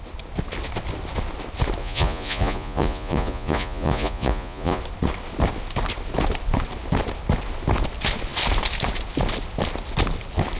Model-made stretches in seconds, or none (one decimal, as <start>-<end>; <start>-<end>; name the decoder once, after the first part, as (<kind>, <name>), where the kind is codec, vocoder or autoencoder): 1.8-4.8 (vocoder, Vocos)